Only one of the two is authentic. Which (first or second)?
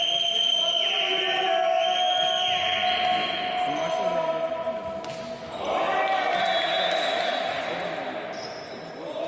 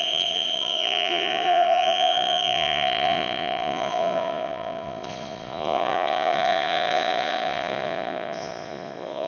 first